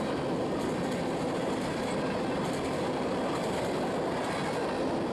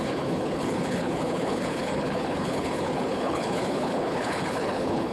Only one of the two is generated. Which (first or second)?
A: second